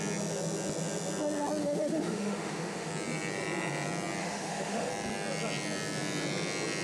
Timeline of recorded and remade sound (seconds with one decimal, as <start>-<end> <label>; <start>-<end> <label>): 0.0-1.6 recorded; 1.6-2.9 remade; 2.9-4.2 recorded; 4.2-4.9 remade; 4.9-6.8 recorded

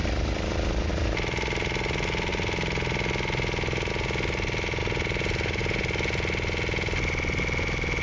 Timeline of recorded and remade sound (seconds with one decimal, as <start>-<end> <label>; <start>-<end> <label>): 0.0-8.0 recorded

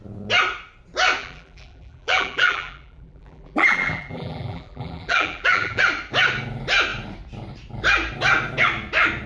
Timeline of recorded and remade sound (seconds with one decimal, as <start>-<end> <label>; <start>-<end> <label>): 0.0-1.2 recorded; 1.2-5.8 remade; 5.8-9.3 recorded

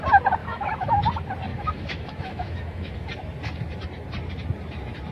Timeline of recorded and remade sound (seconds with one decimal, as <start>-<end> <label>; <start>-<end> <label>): 0.0-0.4 recorded; 0.4-1.0 remade; 1.0-1.5 recorded; 1.5-3.1 remade; 3.1-5.1 recorded

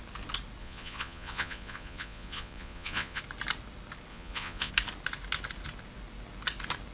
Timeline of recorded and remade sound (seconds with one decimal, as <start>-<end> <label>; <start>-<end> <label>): 0.0-0.6 recorded; 0.6-3.2 remade; 3.2-4.1 recorded; 4.1-4.7 remade; 4.7-6.9 recorded

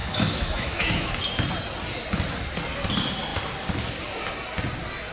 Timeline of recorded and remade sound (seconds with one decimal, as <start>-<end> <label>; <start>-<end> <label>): 0.0-1.1 remade; 1.1-5.1 recorded

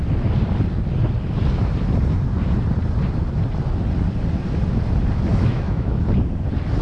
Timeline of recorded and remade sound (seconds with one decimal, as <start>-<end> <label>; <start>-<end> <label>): 0.0-5.3 recorded; 5.3-6.0 remade; 6.0-6.8 recorded

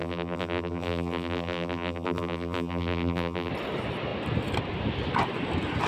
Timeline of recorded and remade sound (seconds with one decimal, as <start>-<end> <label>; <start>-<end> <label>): 0.0-3.5 remade; 3.5-5.9 recorded